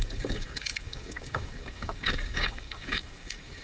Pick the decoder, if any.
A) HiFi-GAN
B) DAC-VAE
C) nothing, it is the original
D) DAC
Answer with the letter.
D